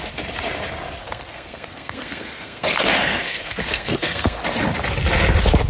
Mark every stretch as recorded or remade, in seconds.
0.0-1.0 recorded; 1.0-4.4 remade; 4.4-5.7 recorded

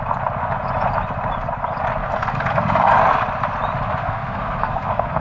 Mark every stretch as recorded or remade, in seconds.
0.0-2.0 recorded; 2.0-2.6 remade; 2.6-4.0 recorded; 4.0-5.2 remade